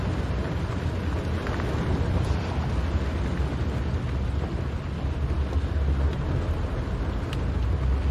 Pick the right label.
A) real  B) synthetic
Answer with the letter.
A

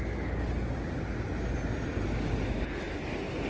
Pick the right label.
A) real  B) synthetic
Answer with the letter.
A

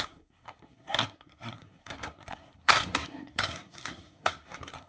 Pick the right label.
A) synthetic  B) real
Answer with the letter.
A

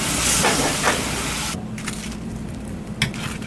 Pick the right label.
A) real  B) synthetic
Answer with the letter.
B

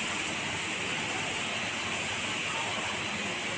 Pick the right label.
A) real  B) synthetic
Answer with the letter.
A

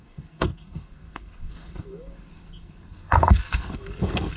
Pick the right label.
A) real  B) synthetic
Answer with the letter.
B